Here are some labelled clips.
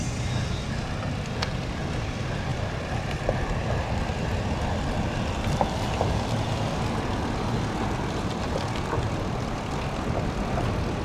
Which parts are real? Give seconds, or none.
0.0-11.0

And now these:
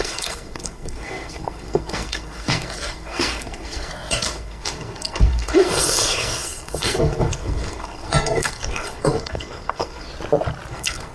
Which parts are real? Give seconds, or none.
10.1-10.7

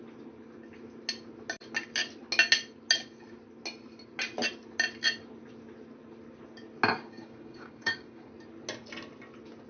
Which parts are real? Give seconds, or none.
0.0-6.9; 8.3-9.7

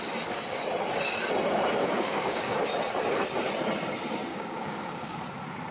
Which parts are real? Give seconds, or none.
0.0-1.8; 2.6-4.3; 5.2-5.7

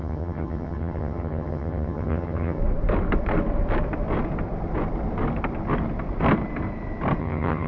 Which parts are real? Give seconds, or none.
2.6-7.2